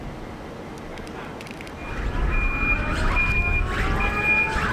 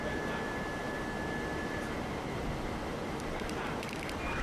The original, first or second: first